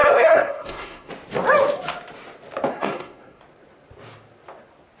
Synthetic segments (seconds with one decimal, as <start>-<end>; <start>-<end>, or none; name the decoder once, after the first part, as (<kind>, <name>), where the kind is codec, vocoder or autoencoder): 0.0-1.1 (codec, SNAC); 2.7-3.4